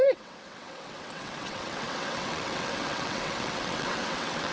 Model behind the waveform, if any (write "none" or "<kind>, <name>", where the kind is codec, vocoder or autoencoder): vocoder, WaveNeXt